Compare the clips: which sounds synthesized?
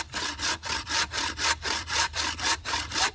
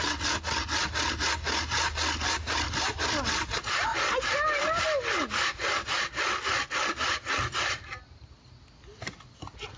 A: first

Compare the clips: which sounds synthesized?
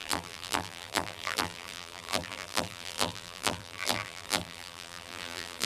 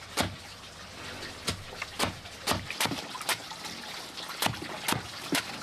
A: first